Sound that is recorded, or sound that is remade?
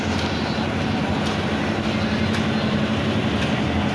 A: recorded